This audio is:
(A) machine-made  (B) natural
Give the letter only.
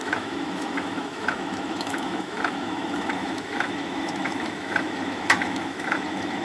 A